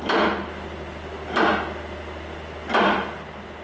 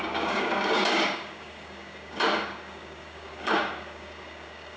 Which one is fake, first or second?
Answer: second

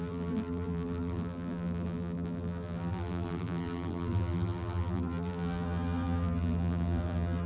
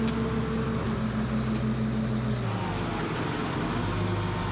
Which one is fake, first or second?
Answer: first